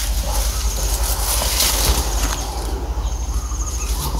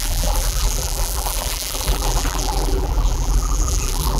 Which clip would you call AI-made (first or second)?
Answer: second